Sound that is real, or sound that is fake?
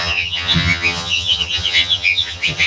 fake